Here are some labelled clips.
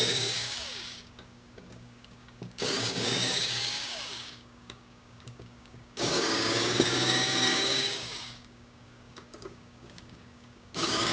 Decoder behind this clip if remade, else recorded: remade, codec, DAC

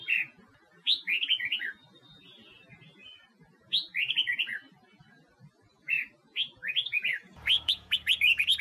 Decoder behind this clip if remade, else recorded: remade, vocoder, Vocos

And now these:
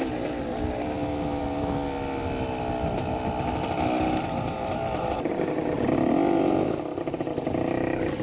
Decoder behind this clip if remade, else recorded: recorded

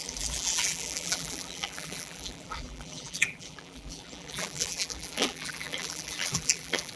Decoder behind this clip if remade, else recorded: remade, vocoder, BigVGAN v2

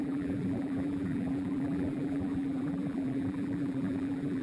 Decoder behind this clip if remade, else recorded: remade, vocoder, BigVGAN v2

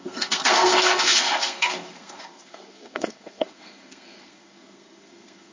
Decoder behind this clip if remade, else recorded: remade, codec, SNAC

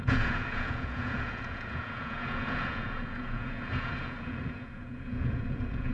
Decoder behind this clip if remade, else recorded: remade, vocoder, Vocos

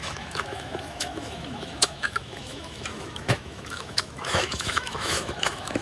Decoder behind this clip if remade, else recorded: remade, autoencoder, DAC-VAE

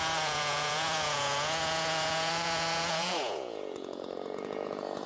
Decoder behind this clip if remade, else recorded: remade, vocoder, Vocos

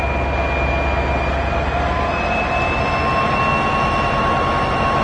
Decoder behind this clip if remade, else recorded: recorded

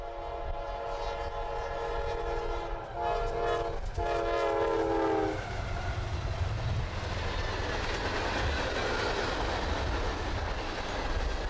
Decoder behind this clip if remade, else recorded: recorded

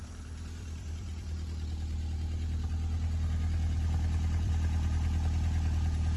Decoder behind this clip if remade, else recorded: recorded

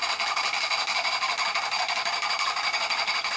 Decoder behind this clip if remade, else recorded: recorded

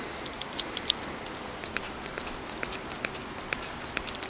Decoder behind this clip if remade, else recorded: recorded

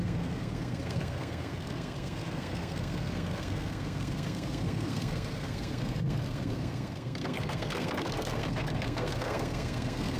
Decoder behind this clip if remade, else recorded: remade, codec, SNAC